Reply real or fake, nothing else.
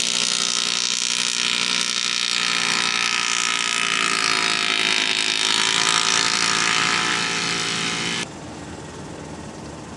real